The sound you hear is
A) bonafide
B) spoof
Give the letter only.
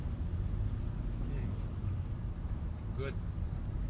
A